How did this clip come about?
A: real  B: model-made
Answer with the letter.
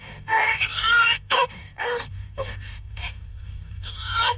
B